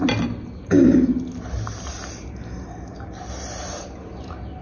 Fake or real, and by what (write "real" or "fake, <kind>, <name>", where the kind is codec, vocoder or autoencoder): real